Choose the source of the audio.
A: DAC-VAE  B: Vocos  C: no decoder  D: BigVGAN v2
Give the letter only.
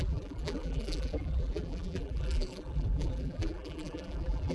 D